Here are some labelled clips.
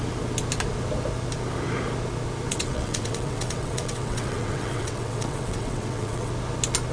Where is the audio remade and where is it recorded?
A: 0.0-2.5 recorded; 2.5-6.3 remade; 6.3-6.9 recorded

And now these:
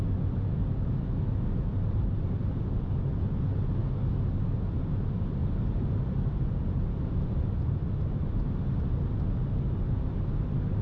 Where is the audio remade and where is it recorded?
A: 0.0-1.7 recorded; 1.7-2.7 remade; 2.7-5.4 recorded; 5.4-7.8 remade; 7.8-10.8 recorded

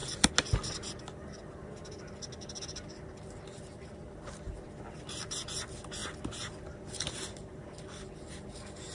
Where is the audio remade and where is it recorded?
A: 0.0-8.9 recorded